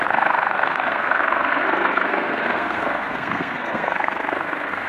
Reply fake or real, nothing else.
fake